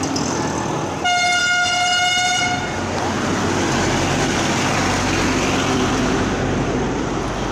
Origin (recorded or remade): recorded